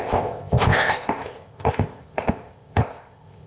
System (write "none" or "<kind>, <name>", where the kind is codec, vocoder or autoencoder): codec, ZipCodec